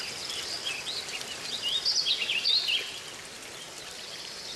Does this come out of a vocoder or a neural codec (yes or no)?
no